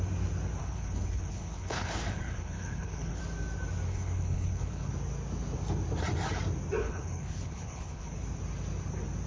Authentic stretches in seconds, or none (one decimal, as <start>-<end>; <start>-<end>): 0.0-0.6; 3.2-3.9; 4.9-6.8; 8.1-9.3